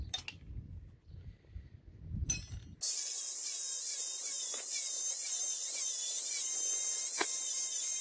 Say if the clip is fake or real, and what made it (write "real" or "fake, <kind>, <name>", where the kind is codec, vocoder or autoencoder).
real